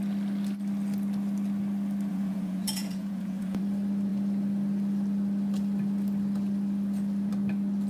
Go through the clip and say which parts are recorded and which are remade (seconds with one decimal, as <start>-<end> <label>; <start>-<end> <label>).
0.0-2.1 recorded; 2.1-3.6 remade; 3.6-7.9 recorded